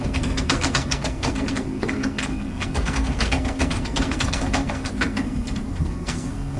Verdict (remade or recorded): remade